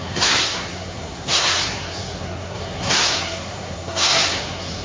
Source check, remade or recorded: remade